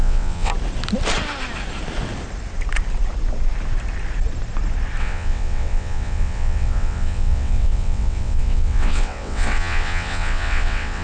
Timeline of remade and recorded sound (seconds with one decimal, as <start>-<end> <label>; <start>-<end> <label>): 0.0-0.5 remade; 0.5-5.0 recorded; 5.0-11.0 remade